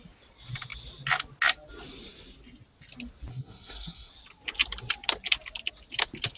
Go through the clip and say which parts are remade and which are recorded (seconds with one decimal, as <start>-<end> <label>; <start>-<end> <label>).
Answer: 0.0-3.3 recorded; 3.3-4.1 remade; 4.1-6.4 recorded